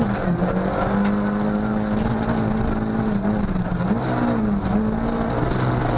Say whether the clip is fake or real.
real